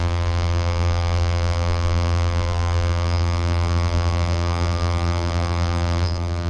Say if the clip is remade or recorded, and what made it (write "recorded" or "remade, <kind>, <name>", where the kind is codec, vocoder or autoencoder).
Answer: remade, vocoder, BigVGAN v2